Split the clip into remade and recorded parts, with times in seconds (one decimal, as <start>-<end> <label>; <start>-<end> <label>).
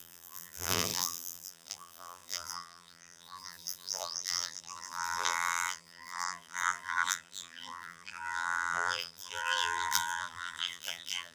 0.0-11.3 remade